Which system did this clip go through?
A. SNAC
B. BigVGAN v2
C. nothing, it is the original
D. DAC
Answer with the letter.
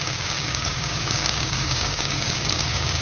D